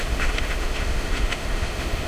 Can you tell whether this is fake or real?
fake